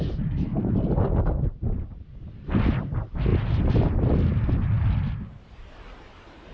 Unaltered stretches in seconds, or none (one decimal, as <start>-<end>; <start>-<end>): 0.0-6.5